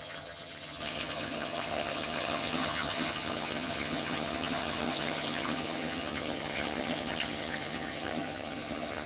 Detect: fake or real fake